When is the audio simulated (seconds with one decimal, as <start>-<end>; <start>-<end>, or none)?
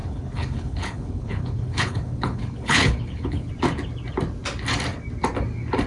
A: 0.0-3.5